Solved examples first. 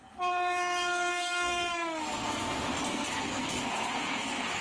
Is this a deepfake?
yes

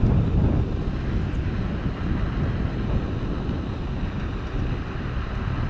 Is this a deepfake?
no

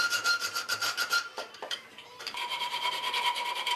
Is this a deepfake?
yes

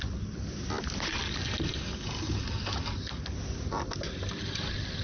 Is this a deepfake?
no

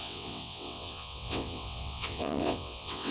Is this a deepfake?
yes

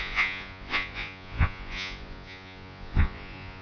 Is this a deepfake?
yes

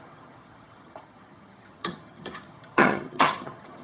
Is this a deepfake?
yes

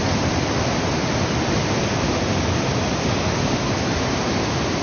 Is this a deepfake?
no